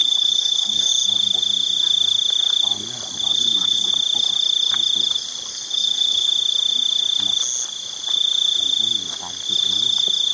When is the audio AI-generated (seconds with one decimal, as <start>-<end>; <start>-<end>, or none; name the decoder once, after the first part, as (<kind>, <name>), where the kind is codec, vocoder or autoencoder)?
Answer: 0.0-0.9 (codec, HILCodec); 3.3-3.9; 5.5-6.3